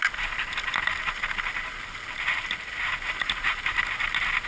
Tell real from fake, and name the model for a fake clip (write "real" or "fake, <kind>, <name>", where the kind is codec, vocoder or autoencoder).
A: real